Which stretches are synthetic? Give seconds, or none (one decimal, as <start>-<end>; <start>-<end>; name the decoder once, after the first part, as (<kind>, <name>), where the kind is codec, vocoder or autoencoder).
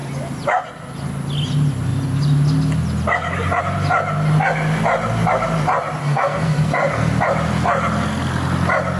6.0-7.1 (codec, SNAC)